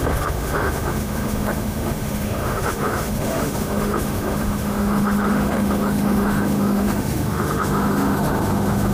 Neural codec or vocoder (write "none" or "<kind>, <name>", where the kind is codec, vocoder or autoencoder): autoencoder, DAC-VAE